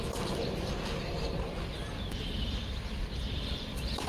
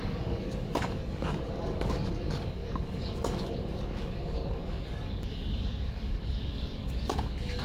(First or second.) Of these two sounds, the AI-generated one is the second